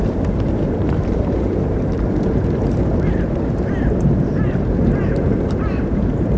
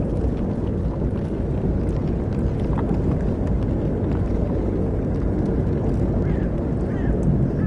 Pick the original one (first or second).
second